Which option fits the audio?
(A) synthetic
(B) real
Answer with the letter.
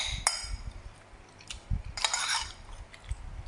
B